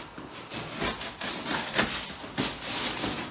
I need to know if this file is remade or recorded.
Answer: recorded